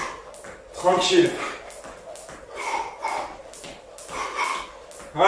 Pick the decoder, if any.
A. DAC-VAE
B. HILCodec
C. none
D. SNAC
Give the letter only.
C